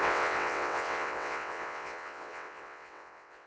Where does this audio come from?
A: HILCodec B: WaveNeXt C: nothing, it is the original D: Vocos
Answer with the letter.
B